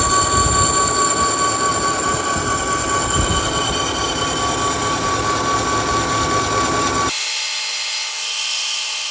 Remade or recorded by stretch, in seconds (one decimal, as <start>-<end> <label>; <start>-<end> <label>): 0.0-1.7 recorded; 1.7-4.2 remade; 4.2-9.1 recorded